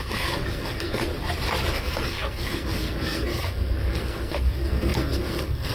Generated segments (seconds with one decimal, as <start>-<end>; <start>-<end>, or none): 0.0-1.1; 1.7-5.7